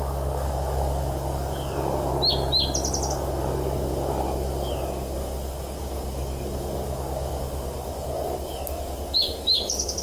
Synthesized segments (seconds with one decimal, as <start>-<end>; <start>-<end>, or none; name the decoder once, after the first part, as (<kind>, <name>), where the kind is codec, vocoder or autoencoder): 0.0-2.1 (codec, DAC); 3.1-10.0